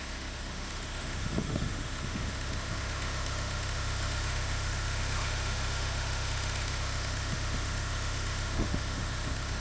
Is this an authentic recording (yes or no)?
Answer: no